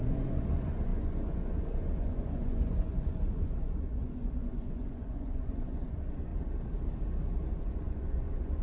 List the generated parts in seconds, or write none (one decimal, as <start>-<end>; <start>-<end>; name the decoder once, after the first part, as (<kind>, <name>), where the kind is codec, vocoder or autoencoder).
0.0-6.3 (vocoder, Vocos); 7.5-8.6